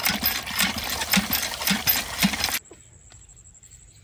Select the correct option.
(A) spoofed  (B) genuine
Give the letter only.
B